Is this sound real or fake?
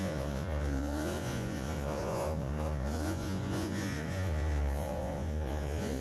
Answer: fake